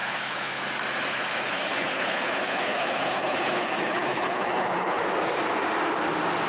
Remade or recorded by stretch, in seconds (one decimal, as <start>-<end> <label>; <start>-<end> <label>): 0.0-0.6 remade; 0.6-1.1 recorded; 1.1-5.0 remade; 5.0-6.5 recorded